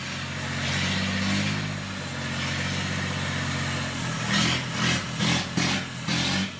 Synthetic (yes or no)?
no